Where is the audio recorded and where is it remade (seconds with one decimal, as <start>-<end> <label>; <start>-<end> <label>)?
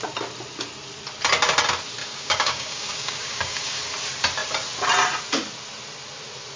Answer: 0.0-2.0 recorded; 2.0-3.8 remade; 3.8-6.6 recorded